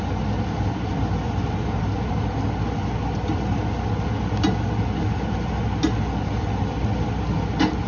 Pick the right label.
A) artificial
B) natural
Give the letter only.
B